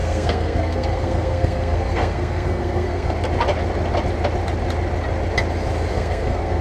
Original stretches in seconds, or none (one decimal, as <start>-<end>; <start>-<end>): 3.1-5.9